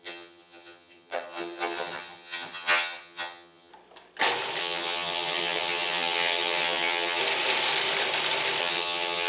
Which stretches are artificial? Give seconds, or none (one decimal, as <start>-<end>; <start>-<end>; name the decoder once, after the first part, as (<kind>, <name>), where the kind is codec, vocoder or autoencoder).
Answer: 0.0-3.7 (vocoder, HiFi-GAN); 4.6-7.2; 8.6-9.3